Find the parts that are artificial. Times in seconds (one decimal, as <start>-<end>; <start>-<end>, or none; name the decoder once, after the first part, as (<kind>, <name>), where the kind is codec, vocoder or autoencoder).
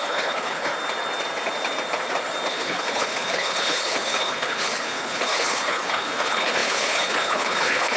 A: 0.0-0.7 (codec, HILCodec); 2.5-8.0